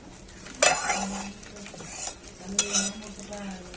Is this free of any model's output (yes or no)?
yes